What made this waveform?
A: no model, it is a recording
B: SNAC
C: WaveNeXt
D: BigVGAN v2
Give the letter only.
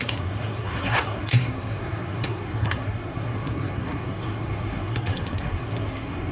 B